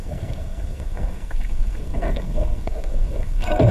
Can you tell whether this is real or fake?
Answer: fake